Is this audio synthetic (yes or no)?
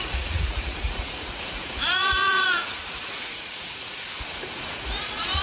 yes